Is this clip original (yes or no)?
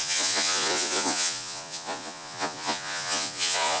no